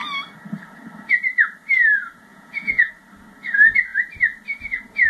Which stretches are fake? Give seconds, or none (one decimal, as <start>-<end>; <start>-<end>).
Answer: 2.3-2.9